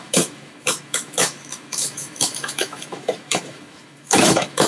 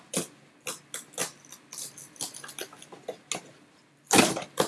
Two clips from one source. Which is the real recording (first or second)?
second